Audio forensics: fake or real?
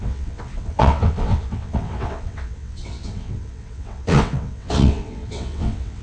fake